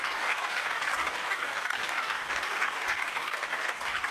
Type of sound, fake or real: fake